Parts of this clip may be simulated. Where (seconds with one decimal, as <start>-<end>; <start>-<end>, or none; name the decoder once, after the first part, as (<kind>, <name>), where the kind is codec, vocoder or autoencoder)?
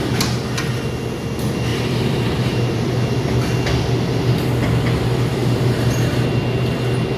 1.7-2.9 (vocoder, BigVGAN v2); 5.4-6.4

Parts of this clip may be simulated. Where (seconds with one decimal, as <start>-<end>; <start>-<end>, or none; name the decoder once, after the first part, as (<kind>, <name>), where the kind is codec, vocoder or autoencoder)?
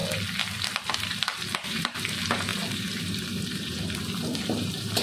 0.9-5.0 (vocoder, BigVGAN v2)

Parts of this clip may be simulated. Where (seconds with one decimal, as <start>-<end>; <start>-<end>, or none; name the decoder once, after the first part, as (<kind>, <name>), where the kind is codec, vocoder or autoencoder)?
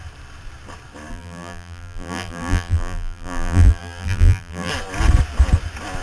1.1-4.7 (vocoder, BigVGAN v2)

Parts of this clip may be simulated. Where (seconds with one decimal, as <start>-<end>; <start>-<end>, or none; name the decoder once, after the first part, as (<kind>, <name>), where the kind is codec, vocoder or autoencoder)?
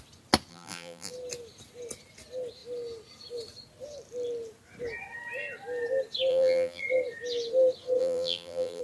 0.5-1.1 (vocoder, BigVGAN v2); 6.3-6.8; 8.0-8.8